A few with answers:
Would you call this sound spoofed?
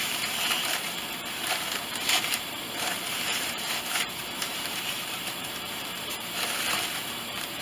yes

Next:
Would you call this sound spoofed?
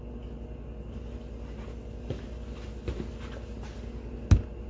no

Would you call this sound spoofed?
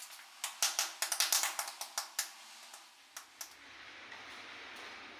no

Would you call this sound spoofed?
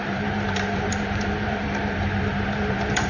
yes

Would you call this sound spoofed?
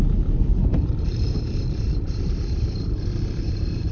yes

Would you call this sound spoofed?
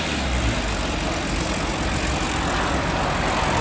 no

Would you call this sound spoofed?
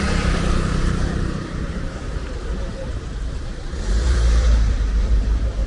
yes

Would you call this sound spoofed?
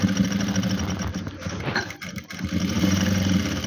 yes